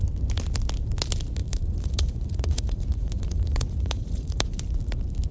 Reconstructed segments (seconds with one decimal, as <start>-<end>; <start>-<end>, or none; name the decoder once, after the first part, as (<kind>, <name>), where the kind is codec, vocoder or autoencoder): 1.4-4.6 (vocoder, Vocos)